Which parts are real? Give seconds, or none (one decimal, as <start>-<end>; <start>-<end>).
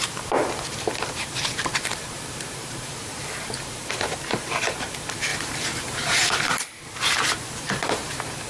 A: none